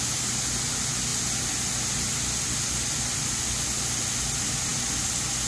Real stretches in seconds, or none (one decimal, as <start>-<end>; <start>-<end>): 0.0-5.5

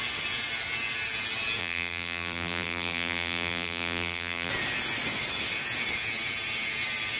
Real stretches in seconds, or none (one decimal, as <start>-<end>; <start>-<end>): 0.0-1.6; 4.5-7.2

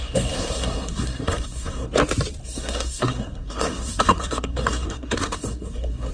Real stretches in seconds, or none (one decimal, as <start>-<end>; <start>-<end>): 1.9-2.4

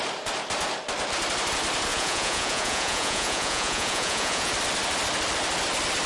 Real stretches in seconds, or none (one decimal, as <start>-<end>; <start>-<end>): 0.0-1.9; 4.5-6.1

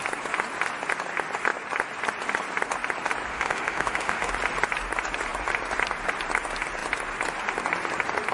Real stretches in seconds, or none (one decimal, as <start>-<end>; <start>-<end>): 0.0-3.3; 4.3-8.3

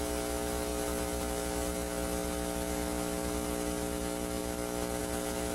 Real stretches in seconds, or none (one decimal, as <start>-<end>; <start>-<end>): 0.0-5.5